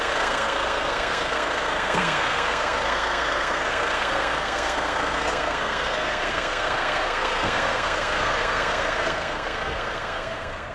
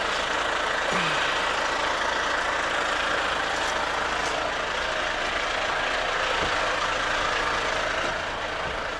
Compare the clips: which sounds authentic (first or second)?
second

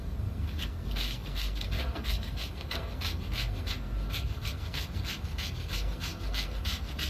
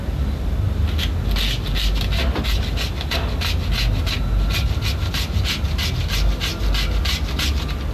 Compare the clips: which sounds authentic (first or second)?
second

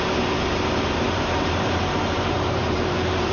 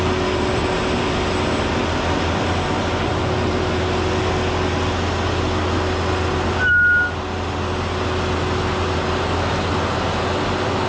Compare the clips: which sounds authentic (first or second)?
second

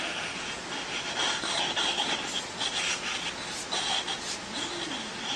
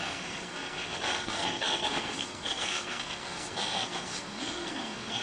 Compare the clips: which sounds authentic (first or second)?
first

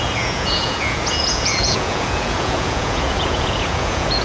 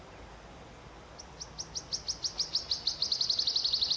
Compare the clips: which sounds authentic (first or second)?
second